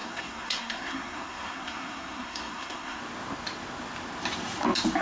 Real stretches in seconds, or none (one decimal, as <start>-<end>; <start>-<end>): 3.0-5.0